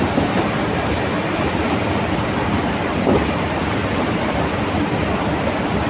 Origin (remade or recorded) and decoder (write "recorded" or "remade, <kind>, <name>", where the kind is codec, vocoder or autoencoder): remade, vocoder, BigVGAN v2